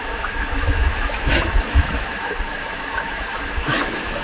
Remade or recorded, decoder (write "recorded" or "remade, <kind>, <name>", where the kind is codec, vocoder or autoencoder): remade, autoencoder, DAC-VAE